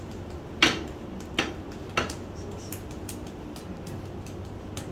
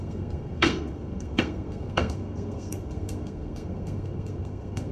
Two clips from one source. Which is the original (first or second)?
first